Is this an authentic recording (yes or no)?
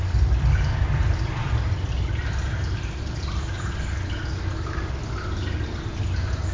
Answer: yes